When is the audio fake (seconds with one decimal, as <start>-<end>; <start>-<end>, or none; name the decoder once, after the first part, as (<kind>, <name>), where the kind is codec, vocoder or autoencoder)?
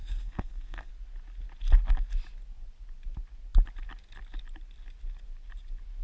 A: 0.0-0.9 (codec, SNAC)